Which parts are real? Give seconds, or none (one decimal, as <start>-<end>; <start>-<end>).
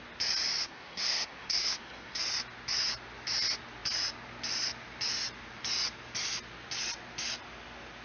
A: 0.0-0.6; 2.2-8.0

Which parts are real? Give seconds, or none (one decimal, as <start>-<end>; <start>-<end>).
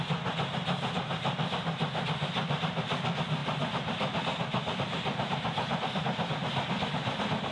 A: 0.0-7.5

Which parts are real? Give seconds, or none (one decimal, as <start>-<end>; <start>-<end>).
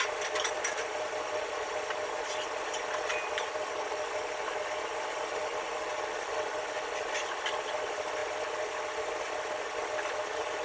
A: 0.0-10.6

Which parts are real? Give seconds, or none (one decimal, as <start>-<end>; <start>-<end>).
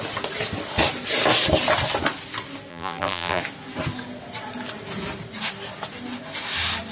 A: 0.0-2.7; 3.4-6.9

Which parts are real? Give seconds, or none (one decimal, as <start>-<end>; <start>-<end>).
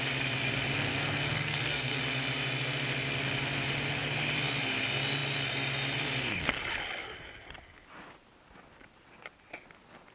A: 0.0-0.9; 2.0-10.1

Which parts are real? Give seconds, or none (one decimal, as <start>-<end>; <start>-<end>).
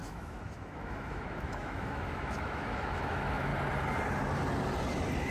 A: 3.5-5.3